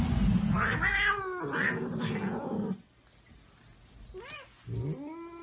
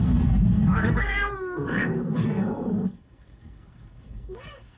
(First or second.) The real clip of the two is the first